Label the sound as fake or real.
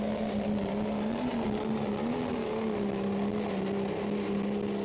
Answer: real